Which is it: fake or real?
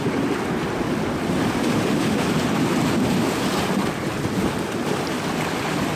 real